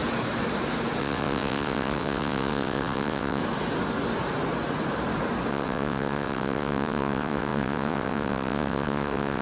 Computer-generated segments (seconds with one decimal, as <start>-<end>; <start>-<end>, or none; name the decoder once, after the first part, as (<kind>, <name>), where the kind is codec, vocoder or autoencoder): 1.0-3.4 (vocoder, WaveNeXt); 5.5-9.4